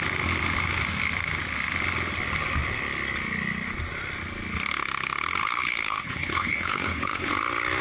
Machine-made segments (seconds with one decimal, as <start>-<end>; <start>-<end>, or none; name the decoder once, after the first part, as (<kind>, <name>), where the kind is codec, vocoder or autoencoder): 5.4-7.3 (codec, HILCodec)